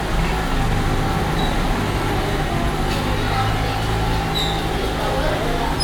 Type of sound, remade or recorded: recorded